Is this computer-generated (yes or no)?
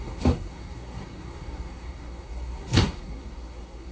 yes